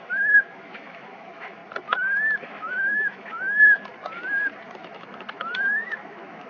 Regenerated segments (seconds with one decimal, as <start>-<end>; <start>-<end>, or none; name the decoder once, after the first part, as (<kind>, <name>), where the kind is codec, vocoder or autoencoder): 0.0-1.6 (autoencoder, DAC-VAE); 2.4-3.9; 4.8-6.5

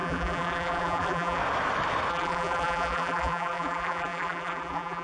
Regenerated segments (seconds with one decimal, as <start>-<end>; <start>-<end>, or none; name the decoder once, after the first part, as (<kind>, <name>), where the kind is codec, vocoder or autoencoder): 0.0-1.4 (vocoder, BigVGAN v2); 2.1-5.0

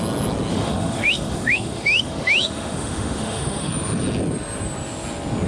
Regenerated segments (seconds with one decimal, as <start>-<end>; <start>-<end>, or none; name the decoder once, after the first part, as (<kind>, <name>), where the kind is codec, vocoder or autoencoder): 0.5-3.7 (autoencoder, DAC-VAE)

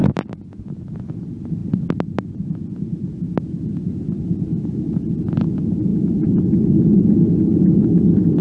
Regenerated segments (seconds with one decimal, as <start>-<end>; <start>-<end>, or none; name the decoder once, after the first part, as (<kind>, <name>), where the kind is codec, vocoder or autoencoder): none

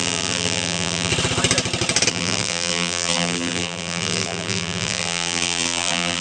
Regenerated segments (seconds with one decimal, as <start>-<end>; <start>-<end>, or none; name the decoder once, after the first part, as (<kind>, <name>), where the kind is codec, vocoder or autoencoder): 0.0-1.1 (vocoder, BigVGAN v2); 2.1-6.2

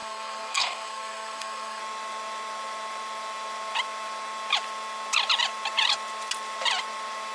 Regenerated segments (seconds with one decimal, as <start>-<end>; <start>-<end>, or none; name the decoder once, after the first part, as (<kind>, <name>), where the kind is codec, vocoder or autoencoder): 0.0-1.8 (codec, SNAC)

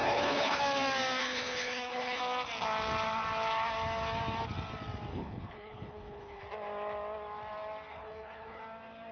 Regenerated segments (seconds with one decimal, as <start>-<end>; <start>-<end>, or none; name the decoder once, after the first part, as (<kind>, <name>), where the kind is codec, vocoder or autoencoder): 0.0-0.6 (codec, HILCodec); 1.2-2.2; 5.1-6.4; 7.9-8.6